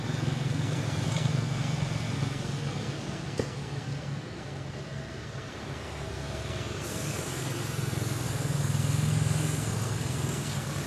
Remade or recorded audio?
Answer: remade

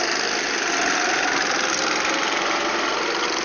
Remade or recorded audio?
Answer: recorded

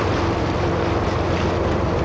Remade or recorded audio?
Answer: recorded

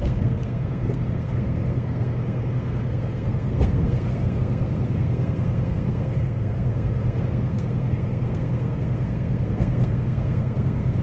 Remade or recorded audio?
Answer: remade